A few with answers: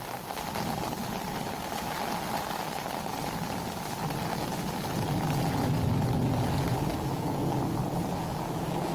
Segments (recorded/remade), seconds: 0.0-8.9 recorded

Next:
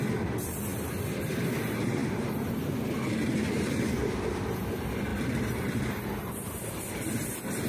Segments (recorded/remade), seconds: 0.0-0.7 recorded; 0.7-1.6 remade; 1.6-2.0 recorded; 2.0-2.5 remade; 2.5-5.1 recorded; 5.1-5.9 remade; 5.9-7.7 recorded